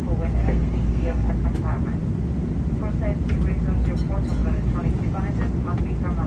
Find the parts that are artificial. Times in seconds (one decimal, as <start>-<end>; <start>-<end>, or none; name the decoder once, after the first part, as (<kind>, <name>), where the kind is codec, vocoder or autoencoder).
0.4-1.3 (codec, SNAC)